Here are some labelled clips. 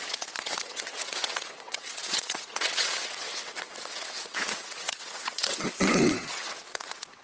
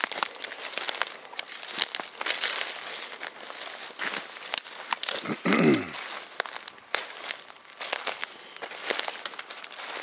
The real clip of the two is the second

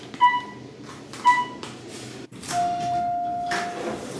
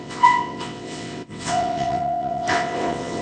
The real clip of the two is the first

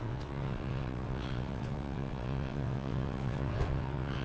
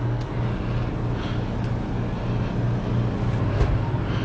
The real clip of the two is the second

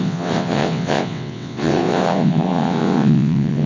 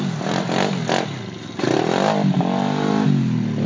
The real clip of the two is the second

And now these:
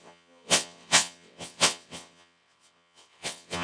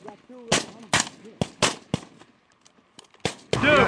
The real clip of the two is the second